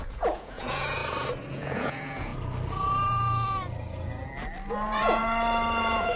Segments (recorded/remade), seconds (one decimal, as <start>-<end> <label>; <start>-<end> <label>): 0.0-1.0 remade; 1.0-1.5 recorded; 1.5-2.3 remade; 2.3-4.7 recorded; 4.7-5.2 remade; 5.2-5.8 recorded; 5.8-6.2 remade